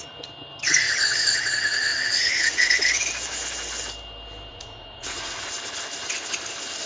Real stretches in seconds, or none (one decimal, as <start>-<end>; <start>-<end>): 0.0-1.9; 2.7-4.5; 5.4-6.9